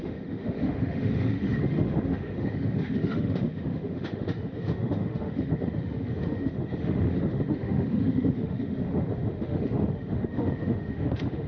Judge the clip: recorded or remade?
remade